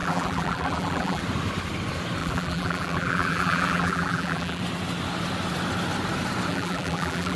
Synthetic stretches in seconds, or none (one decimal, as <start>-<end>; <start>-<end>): 0.0-1.2; 2.2-4.6; 6.5-7.4